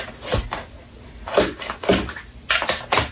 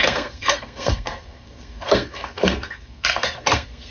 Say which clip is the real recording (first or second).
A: first